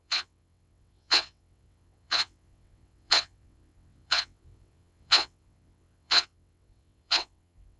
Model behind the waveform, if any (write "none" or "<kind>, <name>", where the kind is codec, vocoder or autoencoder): vocoder, WaveNeXt